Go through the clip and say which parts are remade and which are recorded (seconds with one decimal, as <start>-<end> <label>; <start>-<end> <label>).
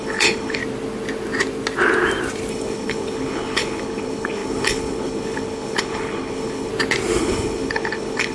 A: 0.0-0.6 remade; 0.6-2.5 recorded; 2.5-6.7 remade; 6.7-7.2 recorded; 7.2-8.3 remade